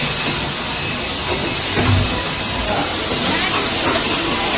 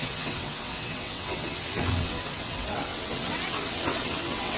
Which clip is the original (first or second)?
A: first